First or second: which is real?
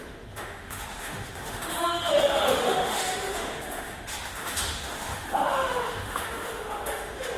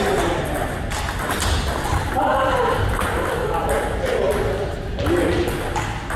second